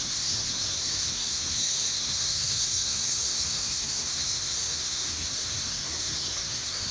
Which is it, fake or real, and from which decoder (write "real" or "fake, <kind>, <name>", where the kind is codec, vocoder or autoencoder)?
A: fake, codec, SNAC